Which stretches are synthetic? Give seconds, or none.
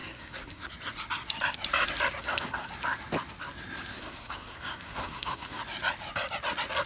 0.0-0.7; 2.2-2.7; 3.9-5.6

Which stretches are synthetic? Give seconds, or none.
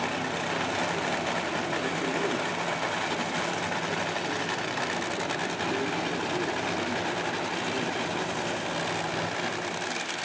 none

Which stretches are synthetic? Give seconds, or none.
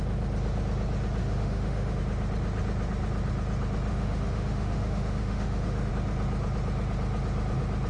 1.2-2.0; 3.9-5.9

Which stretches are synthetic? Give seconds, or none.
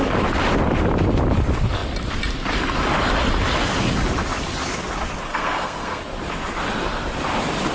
5.3-6.0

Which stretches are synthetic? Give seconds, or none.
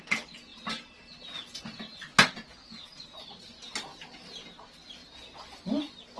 0.5-1.0; 2.6-3.4; 5.0-5.8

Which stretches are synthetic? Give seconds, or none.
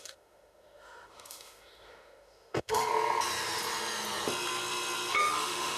0.0-2.9; 5.1-5.8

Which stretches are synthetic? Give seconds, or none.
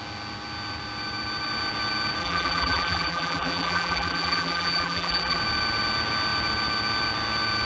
2.2-5.4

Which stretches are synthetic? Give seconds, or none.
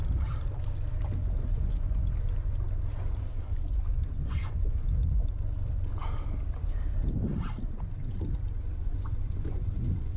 1.2-2.0; 2.9-5.4; 8.8-10.2